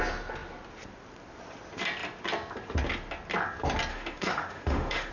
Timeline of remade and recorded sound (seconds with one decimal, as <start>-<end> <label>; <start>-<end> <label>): 0.0-3.9 recorded; 3.9-5.1 remade